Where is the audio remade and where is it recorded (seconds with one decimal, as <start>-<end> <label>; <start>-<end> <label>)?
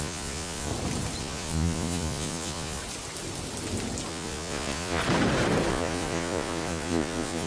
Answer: 0.0-0.7 remade; 0.7-1.2 recorded; 1.2-2.8 remade; 2.8-4.1 recorded; 4.1-5.0 remade; 5.0-5.7 recorded; 5.7-7.5 remade